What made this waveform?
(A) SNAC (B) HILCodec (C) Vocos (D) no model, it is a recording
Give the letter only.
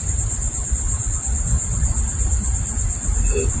D